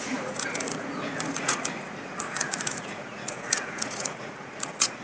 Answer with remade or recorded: remade